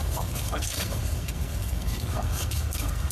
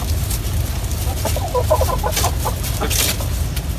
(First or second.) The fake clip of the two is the first